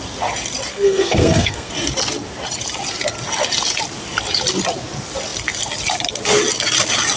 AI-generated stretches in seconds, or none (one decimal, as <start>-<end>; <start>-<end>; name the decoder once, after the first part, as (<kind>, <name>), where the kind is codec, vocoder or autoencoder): 0.7-1.7 (codec, SNAC)